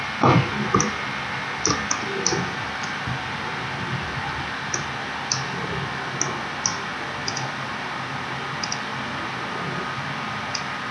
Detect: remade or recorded recorded